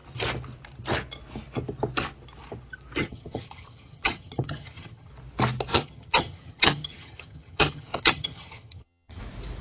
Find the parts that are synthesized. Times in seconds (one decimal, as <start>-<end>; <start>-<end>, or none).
3.0-5.1; 5.7-9.2